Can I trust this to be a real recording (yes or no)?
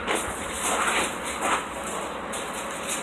yes